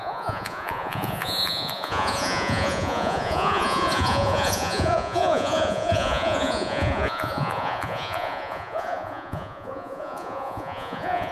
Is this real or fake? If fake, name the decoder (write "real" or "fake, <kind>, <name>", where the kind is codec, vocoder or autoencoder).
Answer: fake, vocoder, Vocos